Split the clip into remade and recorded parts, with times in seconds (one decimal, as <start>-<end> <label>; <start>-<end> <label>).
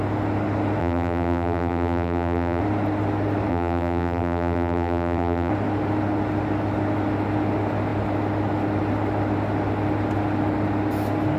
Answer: 0.0-0.8 recorded; 0.8-2.6 remade; 2.6-3.5 recorded; 3.5-5.5 remade; 5.5-11.4 recorded